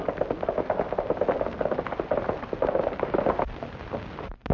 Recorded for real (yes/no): yes